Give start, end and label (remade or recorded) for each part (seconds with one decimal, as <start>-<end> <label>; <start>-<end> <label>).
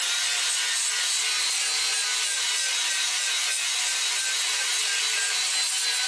0.0-6.1 recorded